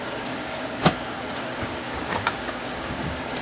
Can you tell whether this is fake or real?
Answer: fake